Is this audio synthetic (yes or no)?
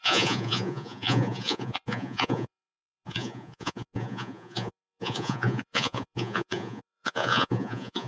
yes